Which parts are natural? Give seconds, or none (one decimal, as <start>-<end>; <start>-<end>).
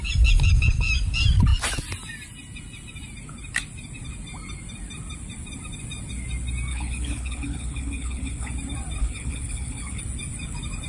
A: 0.0-6.7; 8.5-9.0; 10.0-10.9